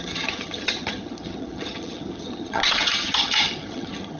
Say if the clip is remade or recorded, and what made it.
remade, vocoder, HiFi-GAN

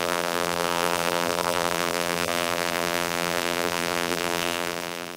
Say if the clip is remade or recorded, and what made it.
remade, vocoder, BigVGAN v2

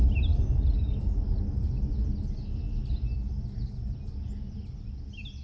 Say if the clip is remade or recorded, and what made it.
recorded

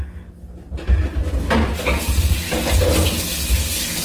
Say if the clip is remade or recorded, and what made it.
recorded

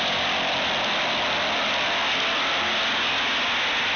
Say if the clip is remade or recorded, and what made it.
recorded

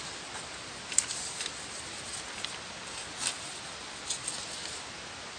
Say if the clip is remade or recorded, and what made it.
recorded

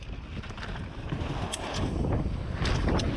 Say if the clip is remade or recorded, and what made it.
recorded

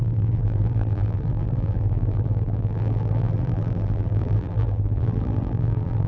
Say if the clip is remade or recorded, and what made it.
remade, vocoder, BigVGAN v2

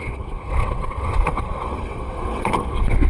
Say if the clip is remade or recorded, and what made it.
remade, vocoder, WaveNeXt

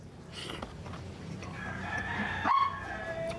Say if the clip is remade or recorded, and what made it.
recorded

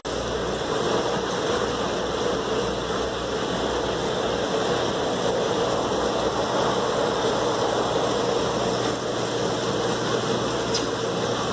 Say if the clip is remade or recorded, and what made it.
recorded